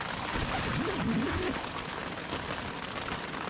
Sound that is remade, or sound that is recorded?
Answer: recorded